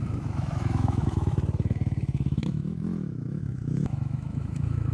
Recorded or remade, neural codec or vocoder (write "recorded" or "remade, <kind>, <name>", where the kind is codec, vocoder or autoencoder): remade, autoencoder, DAC-VAE